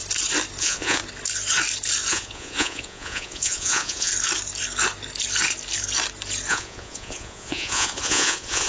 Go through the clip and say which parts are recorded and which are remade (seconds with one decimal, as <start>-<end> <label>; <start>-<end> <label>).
0.0-0.6 recorded; 0.6-1.0 remade; 1.0-2.1 recorded; 2.1-4.1 remade; 4.1-6.5 recorded; 6.5-8.7 remade